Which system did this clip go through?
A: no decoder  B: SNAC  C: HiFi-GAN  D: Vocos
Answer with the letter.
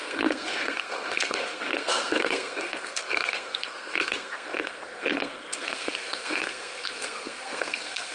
B